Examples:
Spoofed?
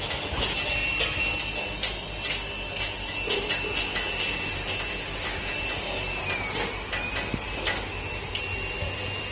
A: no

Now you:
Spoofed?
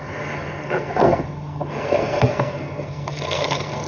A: yes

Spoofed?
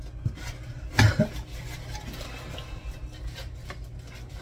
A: no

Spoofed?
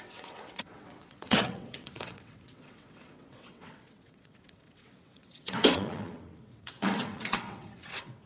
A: yes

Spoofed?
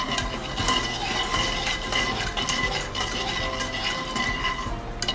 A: no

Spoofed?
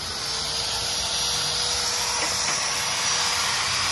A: no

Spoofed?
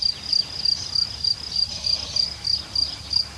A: no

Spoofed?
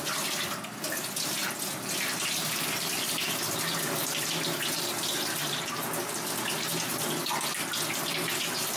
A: no